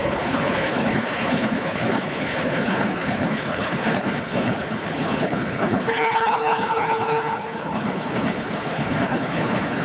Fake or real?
fake